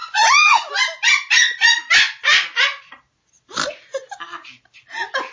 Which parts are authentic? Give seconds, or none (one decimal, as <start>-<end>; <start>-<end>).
0.7-5.3